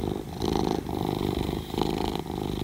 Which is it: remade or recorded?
remade